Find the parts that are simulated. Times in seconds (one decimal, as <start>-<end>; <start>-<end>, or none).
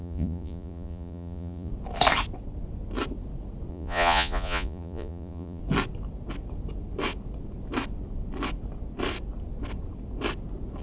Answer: 0.0-1.7; 3.7-5.6